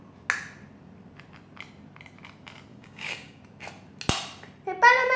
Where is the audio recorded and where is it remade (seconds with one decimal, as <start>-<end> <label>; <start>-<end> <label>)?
0.0-2.7 recorded; 2.7-3.4 remade; 3.4-5.2 recorded